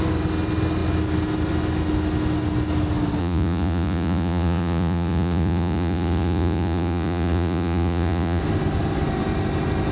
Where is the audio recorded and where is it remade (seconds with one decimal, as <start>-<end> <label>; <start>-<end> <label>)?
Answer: 0.0-3.2 recorded; 3.2-8.4 remade; 8.4-9.9 recorded